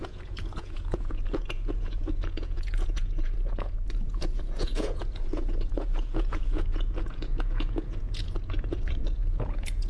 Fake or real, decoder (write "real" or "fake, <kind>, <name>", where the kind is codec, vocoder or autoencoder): fake, vocoder, Vocos